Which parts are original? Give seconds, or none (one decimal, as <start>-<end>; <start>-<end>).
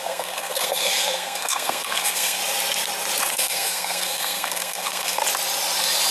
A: 2.4-3.3; 5.2-6.1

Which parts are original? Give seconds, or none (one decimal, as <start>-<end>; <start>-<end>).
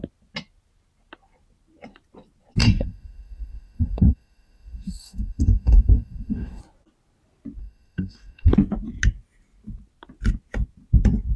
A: 0.0-2.6; 6.6-7.6; 8.5-11.4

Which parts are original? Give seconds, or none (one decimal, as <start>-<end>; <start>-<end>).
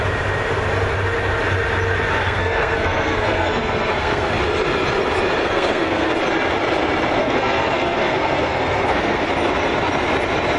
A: 0.0-2.2; 4.3-5.4; 6.1-7.2; 9.2-10.6